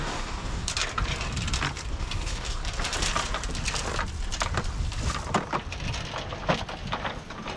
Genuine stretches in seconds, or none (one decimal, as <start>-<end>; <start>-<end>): 0.7-1.9; 2.6-7.6